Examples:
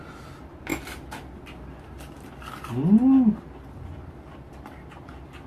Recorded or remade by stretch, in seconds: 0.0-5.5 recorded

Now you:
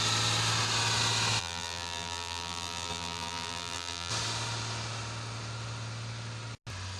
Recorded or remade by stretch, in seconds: 0.0-1.4 recorded; 1.4-4.1 remade; 4.1-7.0 recorded

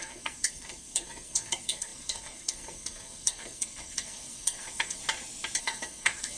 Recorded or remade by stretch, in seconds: 0.0-5.0 remade; 5.0-5.6 recorded; 5.6-6.4 remade

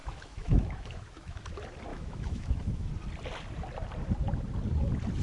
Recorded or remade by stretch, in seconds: 0.0-1.4 remade; 1.4-1.9 recorded; 1.9-2.9 remade; 2.9-5.2 recorded

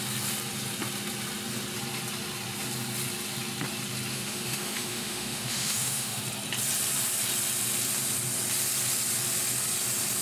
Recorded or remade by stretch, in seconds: 0.0-4.1 recorded; 4.1-6.2 remade; 6.2-10.2 recorded

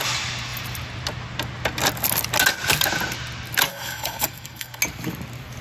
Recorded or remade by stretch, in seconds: 0.0-3.7 recorded; 3.7-4.8 remade; 4.8-5.6 recorded

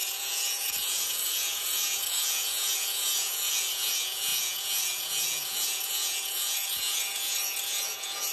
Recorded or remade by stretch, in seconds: 0.0-8.3 remade